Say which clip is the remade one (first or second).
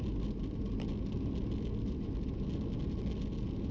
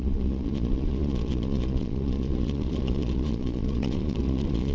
second